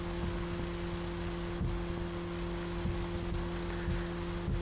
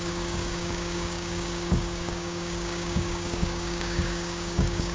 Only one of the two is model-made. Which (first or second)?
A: second